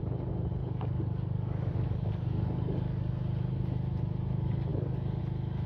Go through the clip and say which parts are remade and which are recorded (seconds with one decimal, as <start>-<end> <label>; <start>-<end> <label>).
0.0-0.6 recorded; 0.6-3.1 remade; 3.1-4.7 recorded; 4.7-5.2 remade; 5.2-5.7 recorded